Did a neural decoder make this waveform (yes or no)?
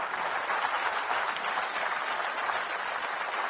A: no